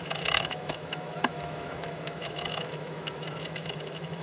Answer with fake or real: fake